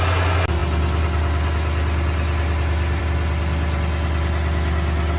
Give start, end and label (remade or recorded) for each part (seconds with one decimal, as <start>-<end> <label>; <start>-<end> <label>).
0.0-5.2 recorded